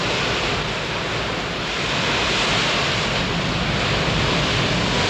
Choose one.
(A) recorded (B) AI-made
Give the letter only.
A